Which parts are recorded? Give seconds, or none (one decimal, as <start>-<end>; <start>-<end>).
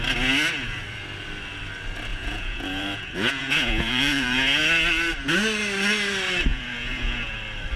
0.0-2.1; 4.6-6.5; 7.3-7.8